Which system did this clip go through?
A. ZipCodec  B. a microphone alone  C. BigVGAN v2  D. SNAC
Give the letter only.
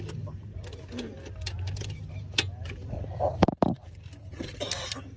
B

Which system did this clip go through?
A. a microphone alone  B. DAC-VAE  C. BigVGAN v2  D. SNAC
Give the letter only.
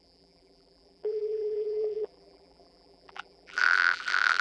C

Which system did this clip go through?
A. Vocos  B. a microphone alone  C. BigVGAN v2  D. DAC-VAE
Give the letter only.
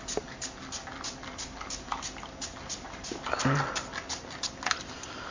B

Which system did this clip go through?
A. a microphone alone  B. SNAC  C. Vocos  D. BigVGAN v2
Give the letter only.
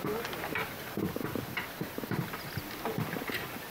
A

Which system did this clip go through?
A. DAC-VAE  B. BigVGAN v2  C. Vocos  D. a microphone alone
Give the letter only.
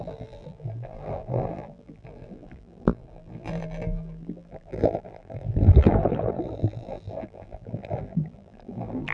B